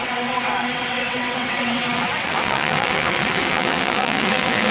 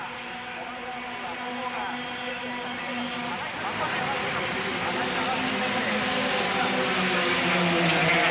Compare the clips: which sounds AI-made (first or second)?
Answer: first